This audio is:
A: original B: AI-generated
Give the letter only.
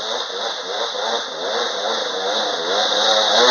A